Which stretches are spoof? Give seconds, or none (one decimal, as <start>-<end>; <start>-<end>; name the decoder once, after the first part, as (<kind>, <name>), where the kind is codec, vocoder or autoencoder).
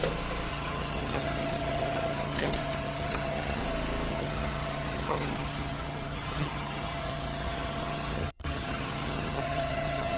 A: 0.5-3.6 (vocoder, HiFi-GAN); 4.1-10.2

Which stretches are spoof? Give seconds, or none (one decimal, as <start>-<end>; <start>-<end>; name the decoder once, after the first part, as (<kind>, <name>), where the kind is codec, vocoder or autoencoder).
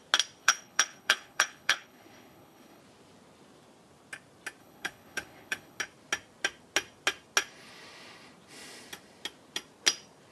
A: 0.4-2.8 (codec, HILCodec); 4.6-5.8